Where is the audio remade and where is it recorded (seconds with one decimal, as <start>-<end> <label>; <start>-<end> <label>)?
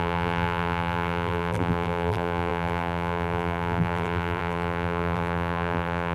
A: 0.0-6.1 remade